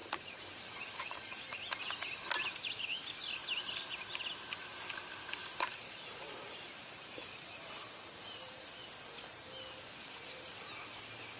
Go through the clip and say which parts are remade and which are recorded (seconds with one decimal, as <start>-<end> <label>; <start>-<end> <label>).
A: 0.0-1.4 remade; 1.4-5.4 recorded; 5.4-8.6 remade; 8.6-11.4 recorded

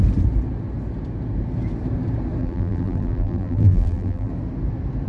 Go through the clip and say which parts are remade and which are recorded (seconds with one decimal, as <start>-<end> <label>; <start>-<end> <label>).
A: 0.0-2.4 recorded; 2.4-4.3 remade; 4.3-5.1 recorded